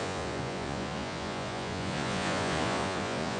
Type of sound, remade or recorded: remade